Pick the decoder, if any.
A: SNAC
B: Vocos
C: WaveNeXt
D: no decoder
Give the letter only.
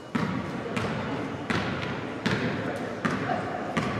D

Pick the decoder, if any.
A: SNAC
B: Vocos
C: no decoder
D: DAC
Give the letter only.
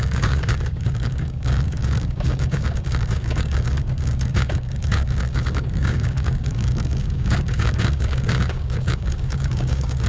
D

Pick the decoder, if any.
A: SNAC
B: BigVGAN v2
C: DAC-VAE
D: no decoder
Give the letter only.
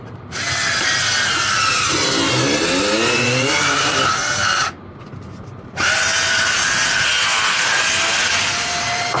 D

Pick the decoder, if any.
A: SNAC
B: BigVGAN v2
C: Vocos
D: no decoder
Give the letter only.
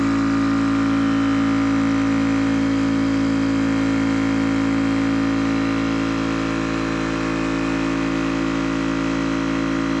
D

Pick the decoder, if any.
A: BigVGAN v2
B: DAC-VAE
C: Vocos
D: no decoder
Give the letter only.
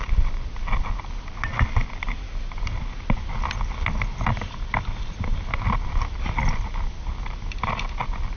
D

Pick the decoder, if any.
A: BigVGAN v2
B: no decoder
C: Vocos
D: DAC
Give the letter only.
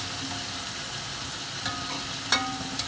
B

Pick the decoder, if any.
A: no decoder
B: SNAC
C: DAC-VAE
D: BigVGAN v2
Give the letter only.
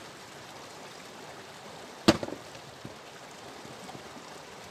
A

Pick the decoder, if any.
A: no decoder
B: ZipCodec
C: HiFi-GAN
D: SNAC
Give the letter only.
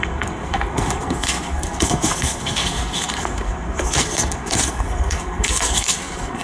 D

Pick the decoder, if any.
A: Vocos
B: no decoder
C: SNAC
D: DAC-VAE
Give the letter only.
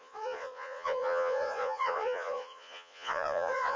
A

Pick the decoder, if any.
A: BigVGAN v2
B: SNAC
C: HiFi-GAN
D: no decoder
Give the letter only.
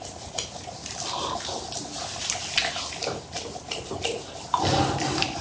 D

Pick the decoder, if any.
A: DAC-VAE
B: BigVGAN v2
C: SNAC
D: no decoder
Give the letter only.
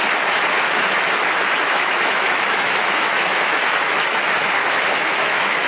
A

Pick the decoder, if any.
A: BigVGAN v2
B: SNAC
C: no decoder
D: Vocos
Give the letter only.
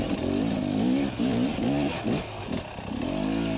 C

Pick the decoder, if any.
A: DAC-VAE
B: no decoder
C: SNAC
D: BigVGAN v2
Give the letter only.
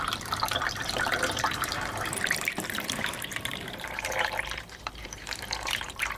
D